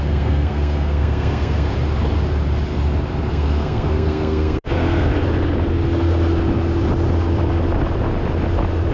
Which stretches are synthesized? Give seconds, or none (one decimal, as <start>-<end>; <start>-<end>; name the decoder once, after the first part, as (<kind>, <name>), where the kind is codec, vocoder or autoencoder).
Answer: 0.0-1.7 (codec, SNAC); 3.3-5.1